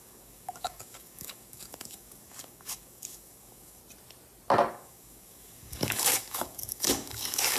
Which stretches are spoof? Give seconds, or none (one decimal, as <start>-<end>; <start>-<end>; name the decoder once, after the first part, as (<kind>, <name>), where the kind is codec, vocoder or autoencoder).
0.0-3.8 (codec, DAC); 4.7-7.6